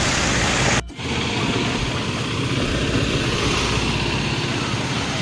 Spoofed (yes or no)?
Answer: no